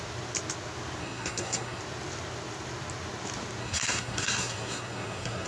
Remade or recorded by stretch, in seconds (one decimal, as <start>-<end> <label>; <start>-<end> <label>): 0.0-1.0 recorded; 1.0-1.8 remade; 1.8-3.6 recorded; 3.6-5.5 remade